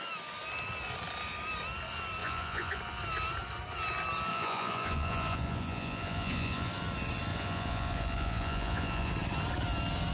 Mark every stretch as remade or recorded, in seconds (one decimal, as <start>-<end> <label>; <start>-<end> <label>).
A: 0.0-2.2 recorded; 2.2-2.8 remade; 2.8-4.3 recorded; 4.3-6.7 remade; 6.7-7.3 recorded; 7.3-9.1 remade; 9.1-10.1 recorded